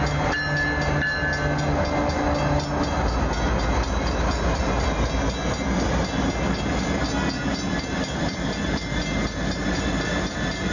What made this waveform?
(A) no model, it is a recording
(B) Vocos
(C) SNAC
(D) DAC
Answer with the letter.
A